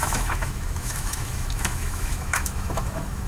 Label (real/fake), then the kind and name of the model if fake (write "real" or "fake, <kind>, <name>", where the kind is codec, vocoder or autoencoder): fake, autoencoder, DAC-VAE